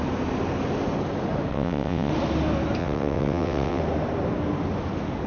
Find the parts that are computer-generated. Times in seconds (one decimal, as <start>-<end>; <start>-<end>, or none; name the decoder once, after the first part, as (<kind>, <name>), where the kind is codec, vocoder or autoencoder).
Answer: 1.5-2.1 (vocoder, WaveNeXt); 2.8-3.8